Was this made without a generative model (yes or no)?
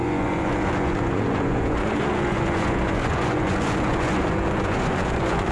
no